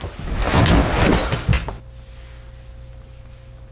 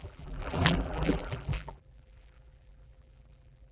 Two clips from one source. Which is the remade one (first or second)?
second